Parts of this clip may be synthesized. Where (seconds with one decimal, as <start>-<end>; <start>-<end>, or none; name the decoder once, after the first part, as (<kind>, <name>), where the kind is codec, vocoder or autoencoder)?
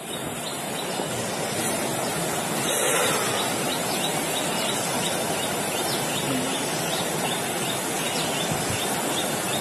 none